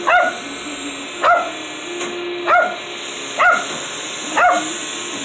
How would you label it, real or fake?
real